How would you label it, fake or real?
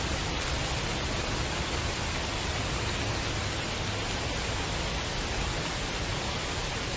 real